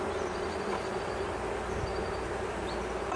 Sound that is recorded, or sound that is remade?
recorded